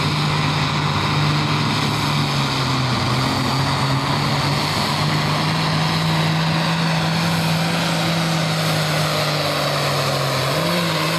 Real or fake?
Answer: real